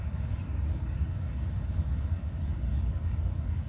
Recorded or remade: remade